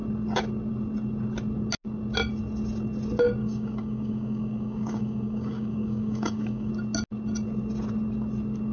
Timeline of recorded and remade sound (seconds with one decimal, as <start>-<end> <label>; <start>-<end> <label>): 0.0-3.4 recorded; 3.4-6.7 remade; 6.7-8.7 recorded